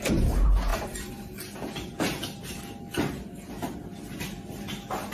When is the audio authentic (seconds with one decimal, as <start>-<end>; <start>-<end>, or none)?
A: 0.0-5.1